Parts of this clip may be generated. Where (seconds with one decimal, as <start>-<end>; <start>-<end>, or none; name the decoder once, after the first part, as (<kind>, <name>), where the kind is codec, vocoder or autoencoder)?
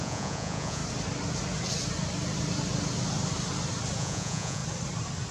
0.0-0.8 (vocoder, Vocos); 4.0-4.6